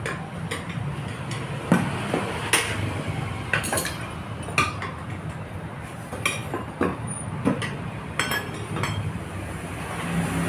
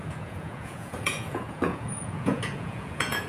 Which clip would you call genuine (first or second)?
first